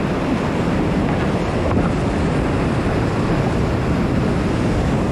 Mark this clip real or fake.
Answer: real